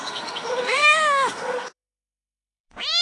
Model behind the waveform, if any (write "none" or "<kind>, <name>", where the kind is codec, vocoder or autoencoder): autoencoder, DAC-VAE